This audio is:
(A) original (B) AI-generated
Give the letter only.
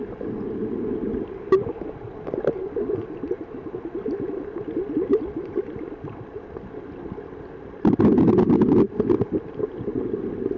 A